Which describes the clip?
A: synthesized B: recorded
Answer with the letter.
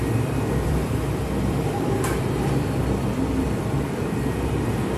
A